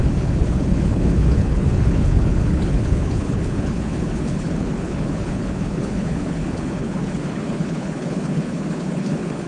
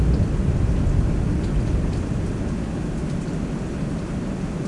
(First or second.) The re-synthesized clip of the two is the first